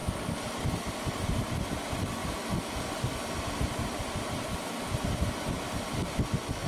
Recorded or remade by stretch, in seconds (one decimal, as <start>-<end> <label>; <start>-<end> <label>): 0.0-6.7 recorded